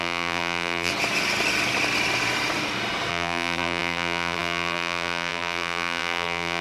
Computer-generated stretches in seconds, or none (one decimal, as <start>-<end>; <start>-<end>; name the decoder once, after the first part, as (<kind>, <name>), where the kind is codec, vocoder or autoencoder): 0.0-0.9 (vocoder, BigVGAN v2); 3.1-6.6